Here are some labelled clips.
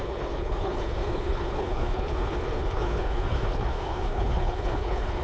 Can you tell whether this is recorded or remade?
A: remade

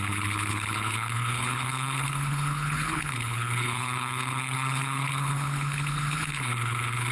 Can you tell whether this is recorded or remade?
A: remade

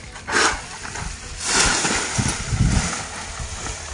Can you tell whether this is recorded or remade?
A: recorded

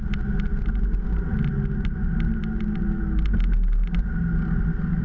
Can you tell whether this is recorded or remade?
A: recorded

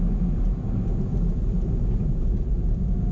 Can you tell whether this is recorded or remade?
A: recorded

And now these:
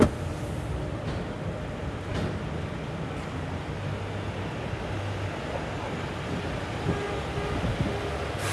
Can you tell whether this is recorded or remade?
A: recorded